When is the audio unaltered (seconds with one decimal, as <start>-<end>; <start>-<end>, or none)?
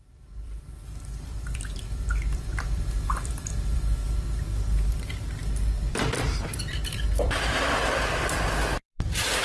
4.0-4.9; 5.4-5.9; 6.5-7.2